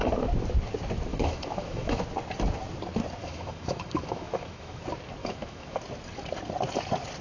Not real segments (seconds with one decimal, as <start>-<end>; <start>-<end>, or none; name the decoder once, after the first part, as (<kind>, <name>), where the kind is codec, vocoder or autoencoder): 1.1-2.0 (autoencoder, DAC-VAE); 3.2-4.8; 5.2-5.8